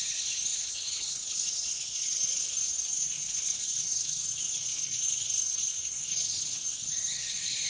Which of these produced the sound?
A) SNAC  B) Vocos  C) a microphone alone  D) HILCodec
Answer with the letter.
D